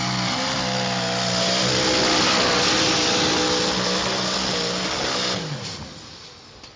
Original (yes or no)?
yes